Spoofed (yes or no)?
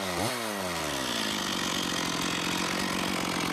no